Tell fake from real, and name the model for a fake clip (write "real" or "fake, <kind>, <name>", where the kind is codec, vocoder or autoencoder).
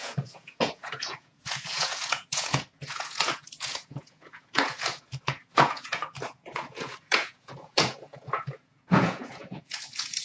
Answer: fake, vocoder, Vocos